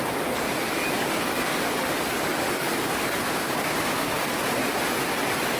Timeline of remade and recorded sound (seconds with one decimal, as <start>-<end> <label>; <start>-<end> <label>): 0.0-1.0 recorded; 1.0-4.4 remade; 4.4-5.6 recorded